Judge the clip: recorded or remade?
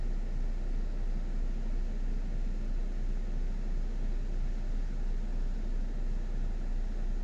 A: recorded